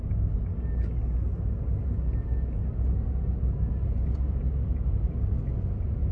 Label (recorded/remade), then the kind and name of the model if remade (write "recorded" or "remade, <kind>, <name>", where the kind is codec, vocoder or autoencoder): recorded